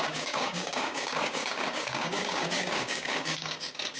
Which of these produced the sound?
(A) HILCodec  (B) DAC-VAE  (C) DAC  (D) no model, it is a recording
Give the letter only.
C